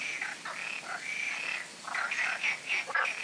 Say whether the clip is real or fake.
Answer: real